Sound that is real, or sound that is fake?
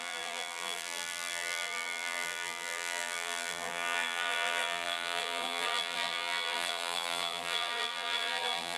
fake